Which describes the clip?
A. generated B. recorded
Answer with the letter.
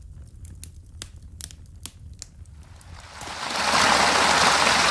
B